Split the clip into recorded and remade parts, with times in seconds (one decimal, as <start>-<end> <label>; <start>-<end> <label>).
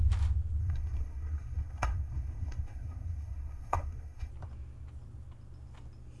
0.0-0.6 recorded; 0.6-4.3 remade; 4.3-6.2 recorded